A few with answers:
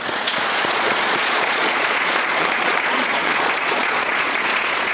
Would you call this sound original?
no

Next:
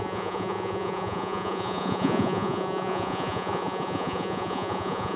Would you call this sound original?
no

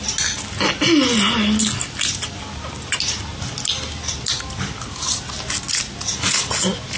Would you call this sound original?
yes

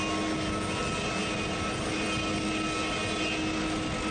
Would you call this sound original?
yes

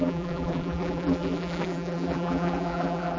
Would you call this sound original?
no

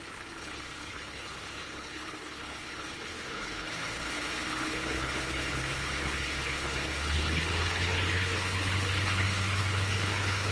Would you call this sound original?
no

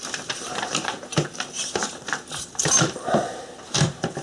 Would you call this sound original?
no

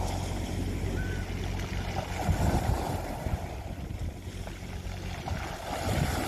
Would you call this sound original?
yes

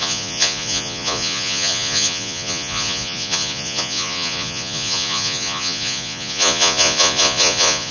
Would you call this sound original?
no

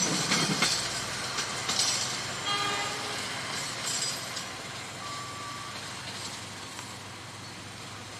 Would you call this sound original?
yes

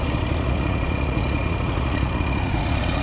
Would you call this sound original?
no